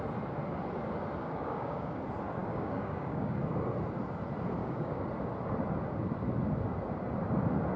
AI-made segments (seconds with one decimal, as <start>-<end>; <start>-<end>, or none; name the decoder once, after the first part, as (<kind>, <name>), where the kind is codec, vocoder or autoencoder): 1.2-2.0 (codec, DAC); 2.4-3.4; 4.6-5.1